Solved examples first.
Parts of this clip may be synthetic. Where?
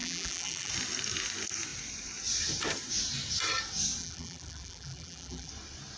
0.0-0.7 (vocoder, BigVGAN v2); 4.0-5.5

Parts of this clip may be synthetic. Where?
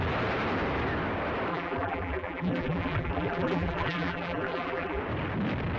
1.5-5.0 (vocoder, BigVGAN v2)